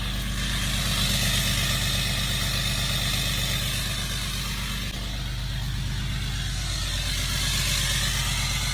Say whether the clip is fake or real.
real